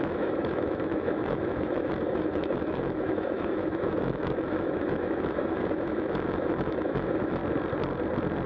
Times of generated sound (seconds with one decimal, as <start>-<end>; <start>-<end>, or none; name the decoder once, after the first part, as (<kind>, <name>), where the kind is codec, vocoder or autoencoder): 0.0-7.4 (autoencoder, DAC-VAE)